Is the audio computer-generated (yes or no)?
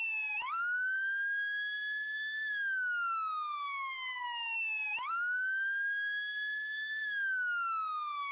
no